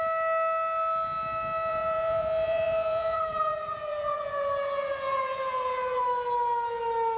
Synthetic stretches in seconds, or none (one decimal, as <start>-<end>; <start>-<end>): 1.7-6.0

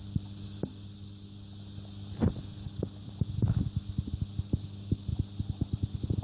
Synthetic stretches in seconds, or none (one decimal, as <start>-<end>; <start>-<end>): none